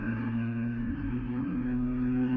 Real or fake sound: fake